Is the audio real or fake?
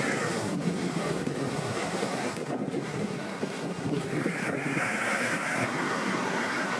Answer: fake